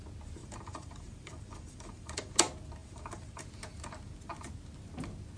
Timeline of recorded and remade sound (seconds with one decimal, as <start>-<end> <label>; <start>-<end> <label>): 0.0-0.4 recorded; 0.4-2.3 remade; 2.3-2.8 recorded; 2.8-3.4 remade; 3.4-5.4 recorded